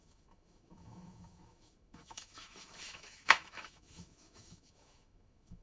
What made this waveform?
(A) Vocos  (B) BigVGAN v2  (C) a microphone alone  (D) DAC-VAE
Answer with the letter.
D